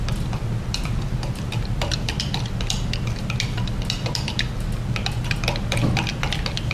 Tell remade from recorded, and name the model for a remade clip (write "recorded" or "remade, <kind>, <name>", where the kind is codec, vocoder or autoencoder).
recorded